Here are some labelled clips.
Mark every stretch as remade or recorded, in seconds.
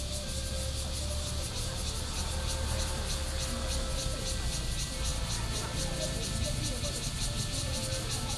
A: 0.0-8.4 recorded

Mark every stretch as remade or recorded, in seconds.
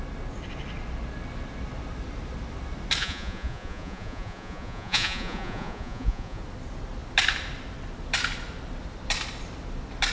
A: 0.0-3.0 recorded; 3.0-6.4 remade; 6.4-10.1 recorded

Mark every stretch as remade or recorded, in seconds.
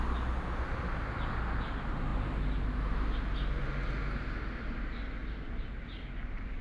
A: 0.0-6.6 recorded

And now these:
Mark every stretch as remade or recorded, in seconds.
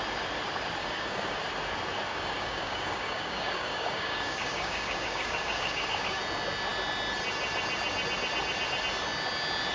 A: 0.0-0.8 recorded; 0.8-1.4 remade; 1.4-2.1 recorded; 2.1-6.2 remade; 6.2-9.7 recorded